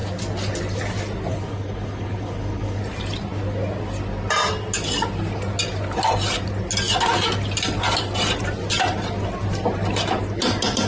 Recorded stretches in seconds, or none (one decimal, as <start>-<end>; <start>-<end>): 0.0-1.3; 2.8-10.9